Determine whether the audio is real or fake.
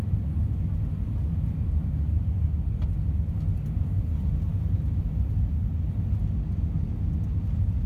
real